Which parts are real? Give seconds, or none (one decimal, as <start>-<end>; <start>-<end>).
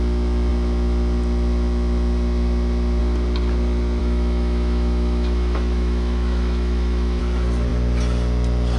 0.0-4.0; 7.2-8.8